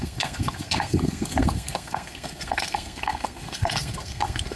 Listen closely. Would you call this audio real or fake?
fake